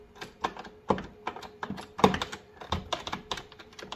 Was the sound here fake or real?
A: real